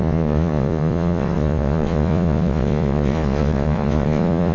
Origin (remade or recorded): remade